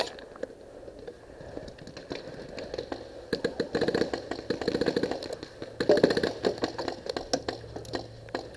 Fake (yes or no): no